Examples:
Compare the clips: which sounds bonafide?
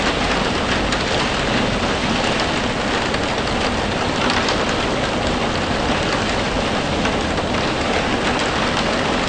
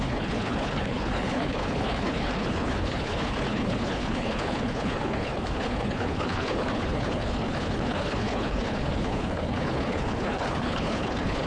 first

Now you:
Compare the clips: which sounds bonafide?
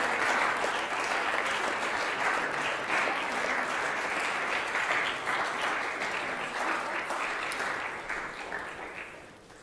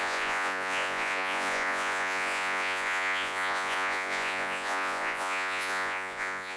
first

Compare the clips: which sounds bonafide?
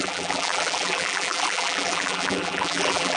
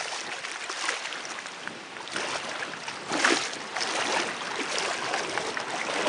second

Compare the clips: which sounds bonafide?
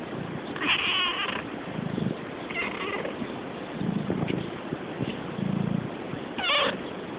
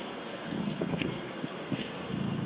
first